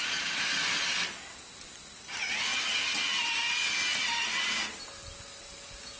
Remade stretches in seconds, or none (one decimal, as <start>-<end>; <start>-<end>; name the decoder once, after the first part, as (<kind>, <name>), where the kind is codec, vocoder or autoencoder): none